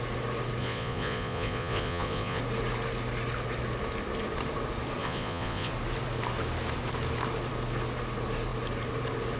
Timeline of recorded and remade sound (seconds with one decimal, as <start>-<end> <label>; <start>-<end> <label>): 0.0-0.6 recorded; 0.6-2.4 remade; 2.4-5.0 recorded; 5.0-5.7 remade; 5.7-9.4 recorded